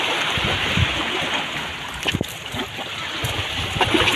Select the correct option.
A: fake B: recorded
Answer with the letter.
B